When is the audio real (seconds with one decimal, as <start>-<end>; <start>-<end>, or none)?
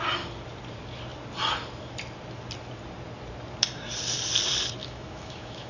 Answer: 0.0-4.8